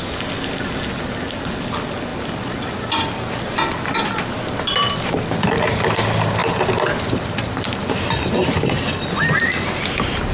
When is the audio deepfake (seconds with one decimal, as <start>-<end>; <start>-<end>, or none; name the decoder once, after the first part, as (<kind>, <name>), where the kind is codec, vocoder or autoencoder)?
none